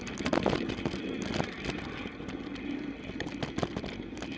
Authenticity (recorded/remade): recorded